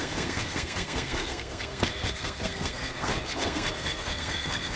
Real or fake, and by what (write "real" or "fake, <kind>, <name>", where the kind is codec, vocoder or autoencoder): fake, codec, SNAC